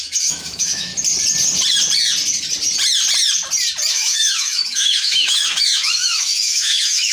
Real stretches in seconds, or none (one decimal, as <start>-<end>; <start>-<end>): 0.9-3.9